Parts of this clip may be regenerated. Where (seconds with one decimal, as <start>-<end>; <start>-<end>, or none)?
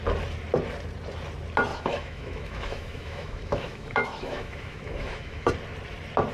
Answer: 1.7-5.5